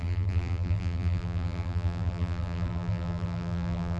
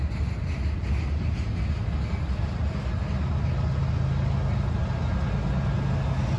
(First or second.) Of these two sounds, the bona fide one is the second